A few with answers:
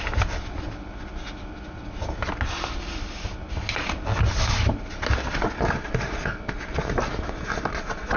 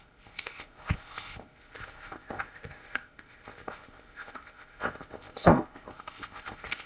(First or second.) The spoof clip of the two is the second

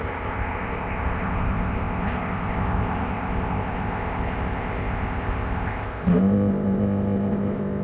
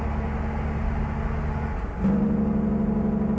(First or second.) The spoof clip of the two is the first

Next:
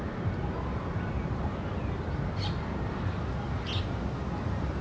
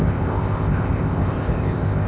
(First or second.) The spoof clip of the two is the second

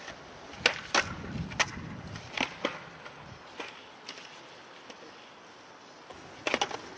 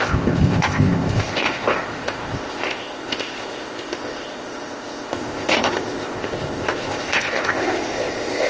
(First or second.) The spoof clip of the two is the second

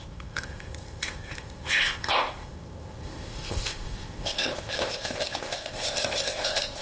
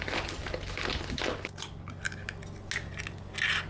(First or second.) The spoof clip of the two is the first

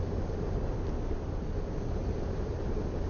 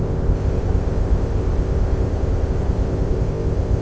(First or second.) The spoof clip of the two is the second